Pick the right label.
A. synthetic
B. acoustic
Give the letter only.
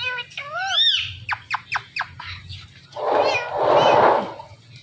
B